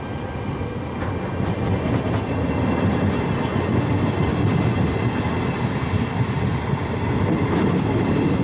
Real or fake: real